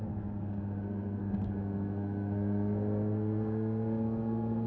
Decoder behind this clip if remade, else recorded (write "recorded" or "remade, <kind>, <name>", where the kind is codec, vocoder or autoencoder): remade, codec, SNAC